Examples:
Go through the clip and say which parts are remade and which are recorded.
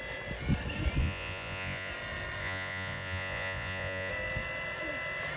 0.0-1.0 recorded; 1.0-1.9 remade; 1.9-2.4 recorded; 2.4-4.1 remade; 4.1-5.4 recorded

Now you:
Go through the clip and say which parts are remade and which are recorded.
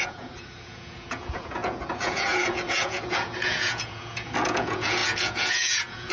0.0-6.1 remade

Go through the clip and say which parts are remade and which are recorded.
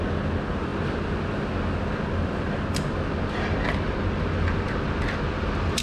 0.0-5.8 recorded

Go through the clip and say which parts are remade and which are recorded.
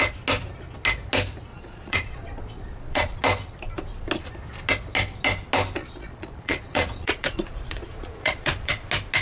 0.0-1.5 recorded; 1.5-3.2 remade; 3.2-5.8 recorded; 5.8-8.7 remade; 8.7-9.2 recorded